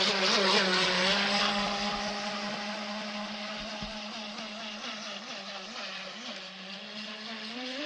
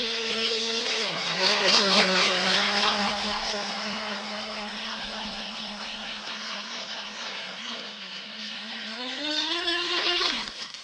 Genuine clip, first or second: first